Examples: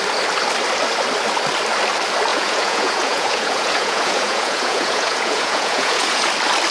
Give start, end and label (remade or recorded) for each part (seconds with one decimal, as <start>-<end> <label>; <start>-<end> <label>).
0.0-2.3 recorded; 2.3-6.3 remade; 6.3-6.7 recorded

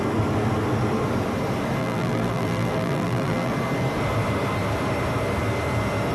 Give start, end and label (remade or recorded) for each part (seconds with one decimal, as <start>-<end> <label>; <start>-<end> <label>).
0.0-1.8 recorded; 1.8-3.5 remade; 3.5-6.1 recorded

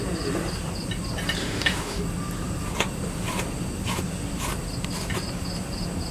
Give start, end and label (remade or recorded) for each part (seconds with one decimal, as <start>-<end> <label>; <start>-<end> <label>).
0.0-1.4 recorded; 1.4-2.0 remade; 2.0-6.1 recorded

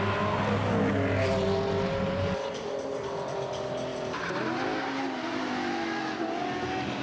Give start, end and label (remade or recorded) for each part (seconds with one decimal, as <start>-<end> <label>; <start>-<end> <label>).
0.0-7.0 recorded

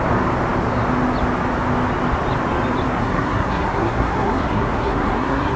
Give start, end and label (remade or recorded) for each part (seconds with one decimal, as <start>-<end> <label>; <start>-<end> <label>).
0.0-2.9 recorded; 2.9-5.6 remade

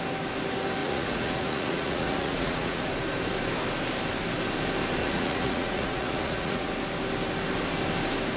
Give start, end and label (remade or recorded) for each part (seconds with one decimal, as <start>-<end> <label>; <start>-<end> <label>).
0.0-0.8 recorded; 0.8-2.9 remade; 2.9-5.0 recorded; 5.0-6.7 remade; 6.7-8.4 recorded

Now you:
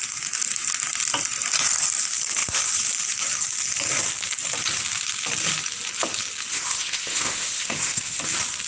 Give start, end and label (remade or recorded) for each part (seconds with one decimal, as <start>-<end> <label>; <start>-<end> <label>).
0.0-6.5 recorded; 6.5-8.2 remade; 8.2-8.7 recorded

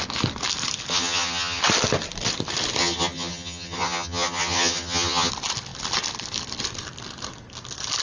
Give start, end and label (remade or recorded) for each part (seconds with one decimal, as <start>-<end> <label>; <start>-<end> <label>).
0.0-0.9 recorded; 0.9-1.6 remade; 1.6-2.8 recorded; 2.8-5.3 remade; 5.3-8.0 recorded